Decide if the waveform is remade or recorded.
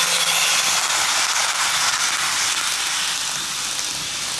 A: recorded